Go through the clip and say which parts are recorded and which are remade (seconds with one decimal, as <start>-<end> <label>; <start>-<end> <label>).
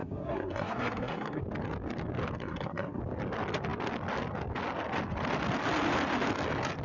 0.0-1.4 remade; 1.4-2.4 recorded; 2.4-3.0 remade; 3.0-6.8 recorded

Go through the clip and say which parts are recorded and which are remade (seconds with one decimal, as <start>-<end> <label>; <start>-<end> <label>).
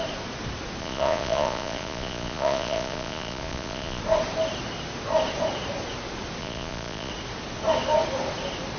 0.0-0.8 recorded; 0.8-4.0 remade; 4.0-6.4 recorded; 6.4-7.1 remade; 7.1-8.8 recorded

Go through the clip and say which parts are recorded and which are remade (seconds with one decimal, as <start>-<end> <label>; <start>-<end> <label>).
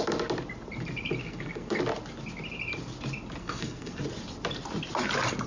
0.0-1.2 recorded; 1.2-1.8 remade; 1.8-3.4 recorded; 3.4-4.0 remade; 4.0-5.5 recorded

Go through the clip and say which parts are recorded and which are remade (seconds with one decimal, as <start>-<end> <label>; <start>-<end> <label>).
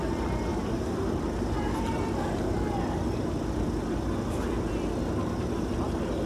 0.0-6.3 recorded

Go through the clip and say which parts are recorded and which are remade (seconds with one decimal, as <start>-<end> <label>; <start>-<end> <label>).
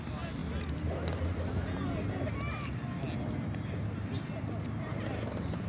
0.0-5.7 recorded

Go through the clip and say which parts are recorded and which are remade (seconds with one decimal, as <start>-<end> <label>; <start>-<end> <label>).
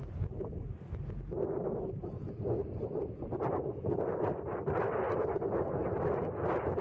0.0-0.9 remade; 0.9-2.6 recorded; 2.6-4.3 remade; 4.3-6.8 recorded